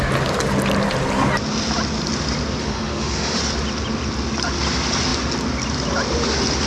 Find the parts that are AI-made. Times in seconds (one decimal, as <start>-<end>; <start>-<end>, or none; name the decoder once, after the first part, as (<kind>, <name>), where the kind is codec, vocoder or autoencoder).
2.6-3.4 (autoencoder, DAC-VAE)